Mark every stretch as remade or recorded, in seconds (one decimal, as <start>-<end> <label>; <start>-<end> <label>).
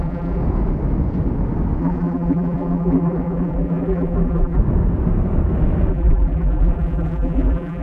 0.0-0.4 remade; 0.4-1.8 recorded; 1.8-4.6 remade; 4.6-5.9 recorded; 5.9-7.8 remade